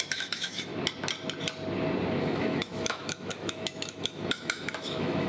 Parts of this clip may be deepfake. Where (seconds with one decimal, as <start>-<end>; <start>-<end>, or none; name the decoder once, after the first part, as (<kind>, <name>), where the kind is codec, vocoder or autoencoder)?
0.0-0.7 (autoencoder, DAC-VAE); 2.2-5.3